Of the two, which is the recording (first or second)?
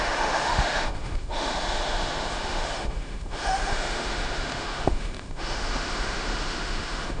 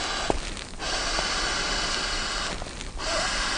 second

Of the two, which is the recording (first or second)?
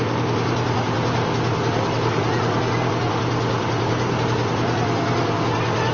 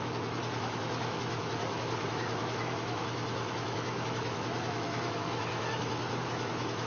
first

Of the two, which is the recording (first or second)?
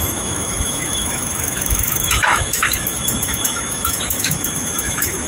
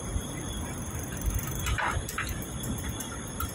second